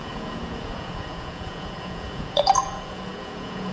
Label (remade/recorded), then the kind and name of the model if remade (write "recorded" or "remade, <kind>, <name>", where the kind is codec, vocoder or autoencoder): remade, vocoder, Vocos